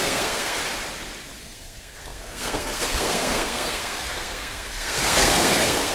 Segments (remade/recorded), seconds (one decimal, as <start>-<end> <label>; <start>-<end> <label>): 0.0-0.6 remade; 0.6-1.4 recorded; 1.4-5.9 remade

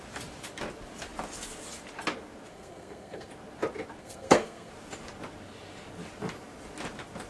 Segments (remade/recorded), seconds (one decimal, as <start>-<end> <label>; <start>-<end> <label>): 0.0-2.5 recorded; 2.5-3.3 remade; 3.3-4.0 recorded; 4.0-4.7 remade; 4.7-7.3 recorded